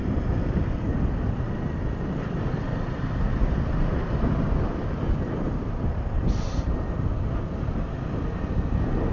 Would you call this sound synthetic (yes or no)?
no